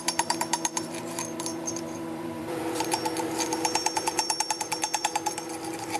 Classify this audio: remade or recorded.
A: remade